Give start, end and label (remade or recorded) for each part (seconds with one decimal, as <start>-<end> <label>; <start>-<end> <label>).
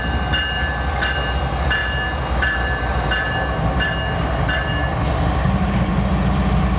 0.0-6.8 recorded